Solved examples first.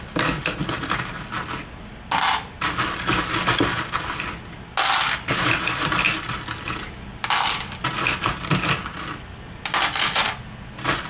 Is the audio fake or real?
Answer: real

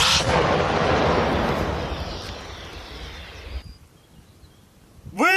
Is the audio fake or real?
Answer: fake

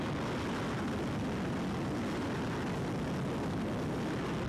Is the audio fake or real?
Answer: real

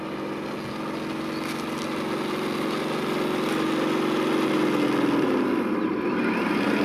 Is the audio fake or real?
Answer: real